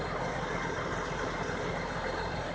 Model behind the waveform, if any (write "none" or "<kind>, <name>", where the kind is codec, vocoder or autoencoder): none